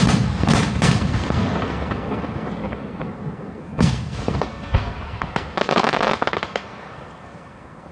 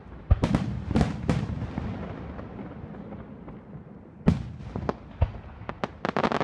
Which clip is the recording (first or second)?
second